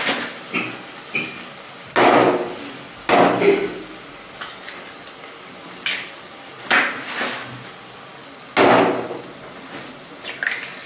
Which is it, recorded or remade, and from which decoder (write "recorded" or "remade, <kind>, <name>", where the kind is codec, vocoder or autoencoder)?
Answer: recorded